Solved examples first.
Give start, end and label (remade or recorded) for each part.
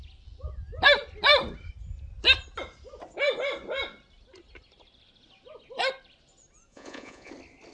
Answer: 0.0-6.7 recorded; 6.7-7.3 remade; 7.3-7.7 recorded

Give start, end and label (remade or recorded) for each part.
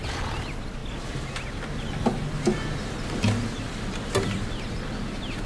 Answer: 0.0-5.5 recorded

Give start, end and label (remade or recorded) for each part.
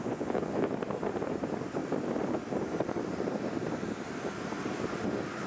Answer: 0.0-0.7 remade; 0.7-5.5 recorded